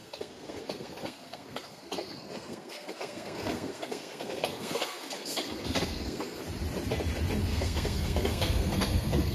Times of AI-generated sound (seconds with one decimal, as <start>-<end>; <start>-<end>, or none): 0.0-6.4; 7.4-9.3